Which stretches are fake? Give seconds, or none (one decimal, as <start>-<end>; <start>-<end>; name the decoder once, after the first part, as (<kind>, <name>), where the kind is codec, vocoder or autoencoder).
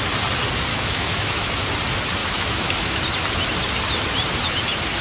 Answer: 0.7-1.6 (autoencoder, DAC-VAE); 2.2-3.0